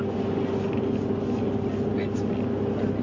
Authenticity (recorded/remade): recorded